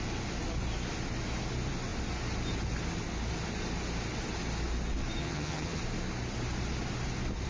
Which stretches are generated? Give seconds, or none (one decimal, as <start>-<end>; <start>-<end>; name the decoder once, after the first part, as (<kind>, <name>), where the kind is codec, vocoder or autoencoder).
5.2-5.8 (vocoder, HiFi-GAN)